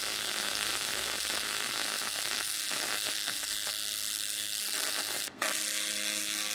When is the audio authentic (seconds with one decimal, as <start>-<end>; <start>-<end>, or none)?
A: none